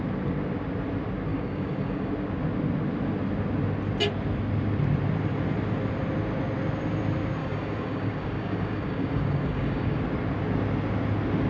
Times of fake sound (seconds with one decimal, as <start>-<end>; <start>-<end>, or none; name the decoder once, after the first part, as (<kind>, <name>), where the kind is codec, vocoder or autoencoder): 1.3-2.1 (codec, DAC); 7.4-10.0